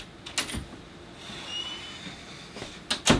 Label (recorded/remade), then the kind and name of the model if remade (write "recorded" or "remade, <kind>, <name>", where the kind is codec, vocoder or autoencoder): recorded